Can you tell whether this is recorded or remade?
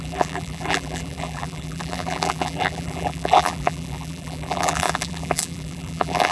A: remade